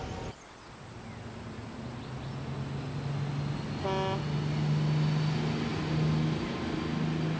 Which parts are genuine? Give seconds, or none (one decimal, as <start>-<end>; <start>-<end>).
0.0-7.4